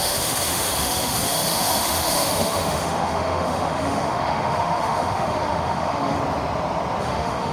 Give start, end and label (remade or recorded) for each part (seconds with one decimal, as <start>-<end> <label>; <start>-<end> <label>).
0.0-6.2 remade; 6.2-7.0 recorded; 7.0-7.5 remade